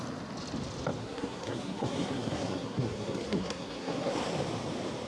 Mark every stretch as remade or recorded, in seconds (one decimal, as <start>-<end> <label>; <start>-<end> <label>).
0.0-1.0 recorded; 1.0-4.1 remade; 4.1-5.1 recorded